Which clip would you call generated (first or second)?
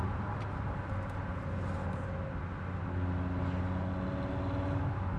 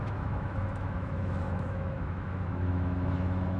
second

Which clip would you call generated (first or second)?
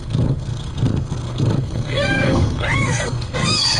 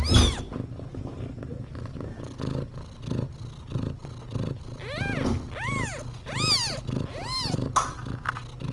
first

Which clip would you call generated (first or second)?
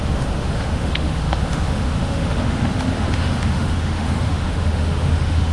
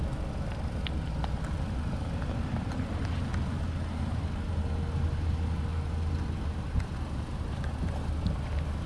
first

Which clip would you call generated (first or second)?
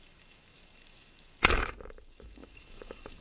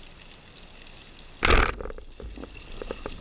first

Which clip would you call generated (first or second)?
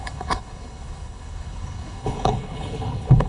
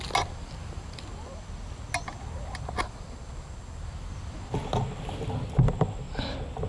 first